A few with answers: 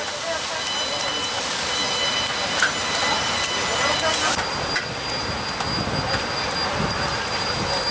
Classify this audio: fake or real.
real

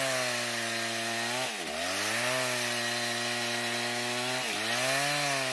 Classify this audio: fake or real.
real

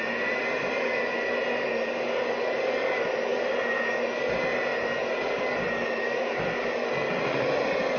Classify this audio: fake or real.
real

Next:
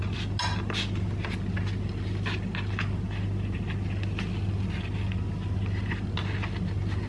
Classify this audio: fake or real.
real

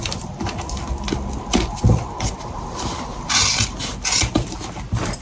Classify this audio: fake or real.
real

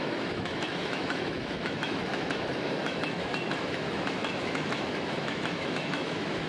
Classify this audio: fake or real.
fake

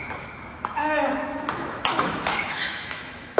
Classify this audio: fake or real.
fake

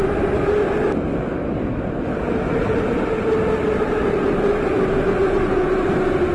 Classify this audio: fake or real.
real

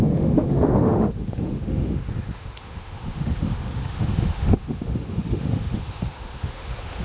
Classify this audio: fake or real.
fake